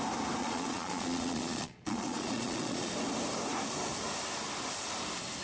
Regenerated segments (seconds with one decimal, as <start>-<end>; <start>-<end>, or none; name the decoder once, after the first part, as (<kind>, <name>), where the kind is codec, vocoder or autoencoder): 0.4-2.9 (vocoder, Vocos)